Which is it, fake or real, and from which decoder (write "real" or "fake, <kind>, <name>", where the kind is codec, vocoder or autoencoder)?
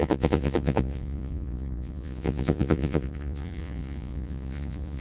fake, vocoder, Vocos